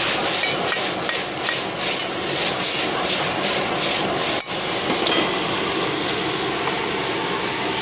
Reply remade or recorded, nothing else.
recorded